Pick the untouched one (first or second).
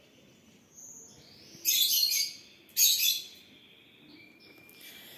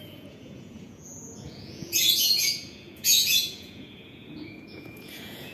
first